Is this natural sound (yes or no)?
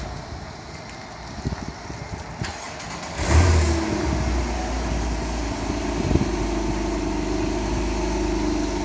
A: yes